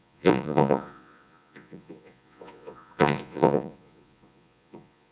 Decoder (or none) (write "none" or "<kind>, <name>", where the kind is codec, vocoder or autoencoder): vocoder, Vocos